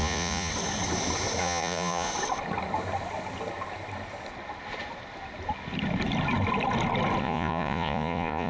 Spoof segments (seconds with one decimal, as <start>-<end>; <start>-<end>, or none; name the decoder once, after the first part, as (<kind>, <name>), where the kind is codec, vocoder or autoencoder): 0.0-0.5 (vocoder, Vocos); 1.4-2.1; 7.2-8.5